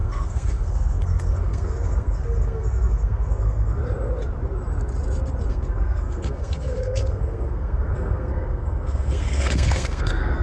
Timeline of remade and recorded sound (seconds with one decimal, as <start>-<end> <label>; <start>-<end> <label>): 0.0-3.8 remade; 3.8-5.5 recorded; 5.5-10.4 remade